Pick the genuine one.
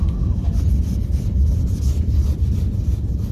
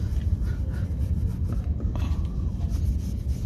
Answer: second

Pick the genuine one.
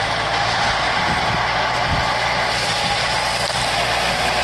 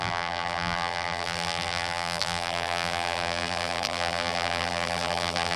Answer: first